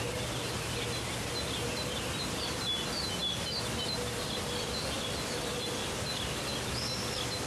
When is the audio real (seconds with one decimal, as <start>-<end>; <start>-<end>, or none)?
0.0-7.5